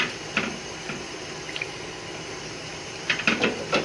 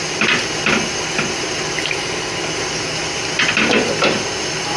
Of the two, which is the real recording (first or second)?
second